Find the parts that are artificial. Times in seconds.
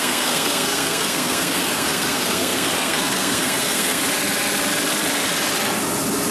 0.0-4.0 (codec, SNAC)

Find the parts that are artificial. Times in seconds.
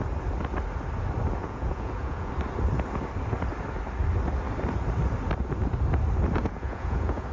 1.4-2.3 (vocoder, Vocos); 6.4-7.3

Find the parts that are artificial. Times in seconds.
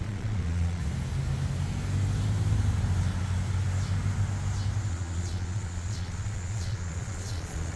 0.0-0.8 (vocoder, Vocos); 4.9-7.8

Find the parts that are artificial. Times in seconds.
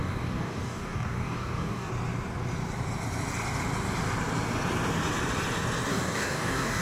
0.0-1.9 (codec, DAC); 5.9-6.8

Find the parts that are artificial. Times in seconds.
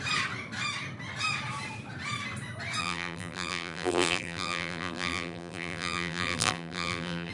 2.8-7.3 (vocoder, BigVGAN v2)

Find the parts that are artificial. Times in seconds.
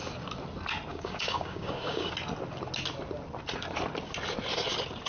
0.9-2.1 (codec, DAC)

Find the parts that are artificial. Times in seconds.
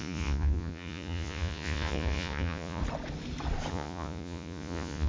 0.0-2.8 (vocoder, Vocos); 3.7-5.1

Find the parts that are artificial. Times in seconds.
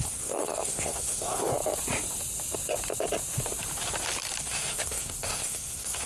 0.0-1.5 (codec, SNAC); 4.4-6.1